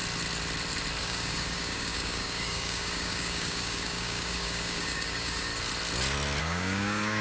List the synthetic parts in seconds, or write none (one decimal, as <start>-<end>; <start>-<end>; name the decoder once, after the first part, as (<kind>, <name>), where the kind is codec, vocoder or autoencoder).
1.0-5.5 (codec, DAC); 6.4-7.2